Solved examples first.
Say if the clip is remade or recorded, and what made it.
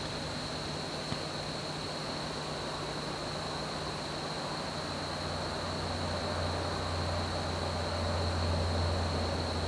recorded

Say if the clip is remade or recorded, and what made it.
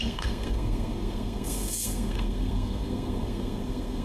remade, codec, SNAC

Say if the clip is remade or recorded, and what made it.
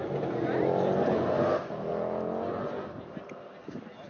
recorded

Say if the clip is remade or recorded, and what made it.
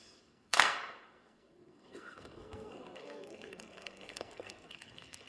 remade, codec, SNAC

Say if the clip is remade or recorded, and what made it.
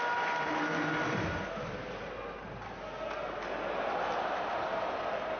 recorded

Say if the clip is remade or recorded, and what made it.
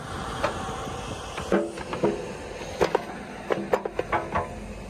recorded